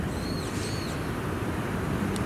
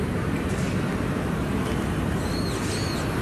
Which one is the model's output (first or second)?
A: first